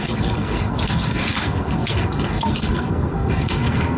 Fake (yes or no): yes